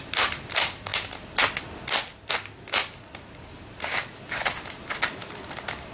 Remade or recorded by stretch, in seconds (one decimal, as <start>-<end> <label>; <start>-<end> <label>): 0.0-5.9 recorded